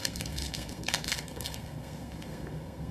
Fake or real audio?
fake